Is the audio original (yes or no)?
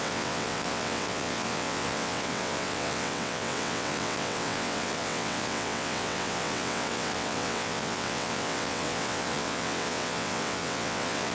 no